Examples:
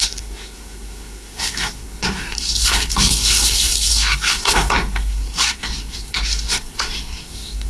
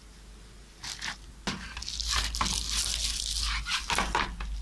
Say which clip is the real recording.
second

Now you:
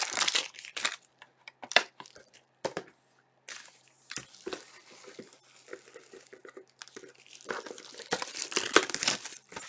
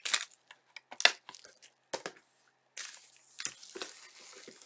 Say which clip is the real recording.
second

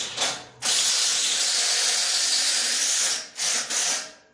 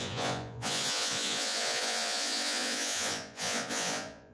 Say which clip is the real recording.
first